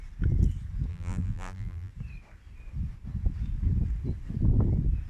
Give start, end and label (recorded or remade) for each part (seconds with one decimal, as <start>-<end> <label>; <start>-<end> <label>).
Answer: 0.0-0.9 recorded; 0.9-1.9 remade; 1.9-5.1 recorded